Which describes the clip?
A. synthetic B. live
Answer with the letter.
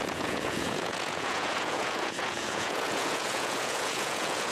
A